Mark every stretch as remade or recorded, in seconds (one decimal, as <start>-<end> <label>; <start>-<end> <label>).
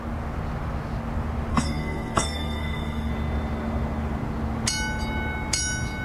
0.0-1.5 recorded; 1.5-3.1 remade; 3.1-6.0 recorded